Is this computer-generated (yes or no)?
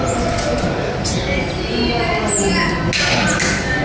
no